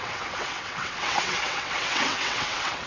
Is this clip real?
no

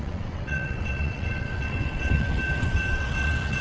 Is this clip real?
no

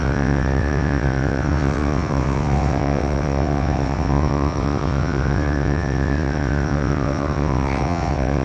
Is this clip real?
no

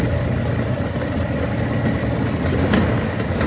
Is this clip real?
yes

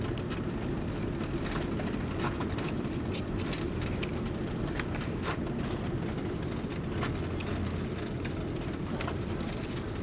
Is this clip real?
yes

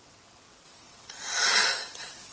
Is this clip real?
no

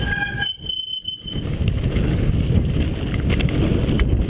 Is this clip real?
yes